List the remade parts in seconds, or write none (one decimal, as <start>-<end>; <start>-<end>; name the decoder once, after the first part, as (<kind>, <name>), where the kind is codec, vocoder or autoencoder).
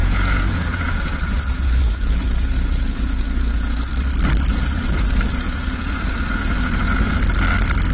0.0-3.9 (vocoder, Vocos); 4.5-7.1